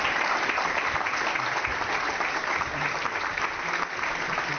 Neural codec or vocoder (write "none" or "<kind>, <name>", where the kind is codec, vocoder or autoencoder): none